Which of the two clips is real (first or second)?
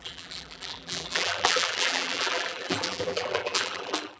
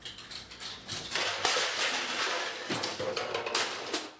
second